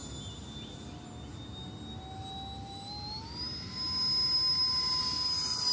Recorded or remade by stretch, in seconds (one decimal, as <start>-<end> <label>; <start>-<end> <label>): 0.0-5.7 recorded